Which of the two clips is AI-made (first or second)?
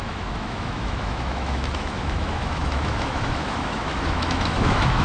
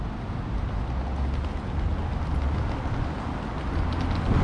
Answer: first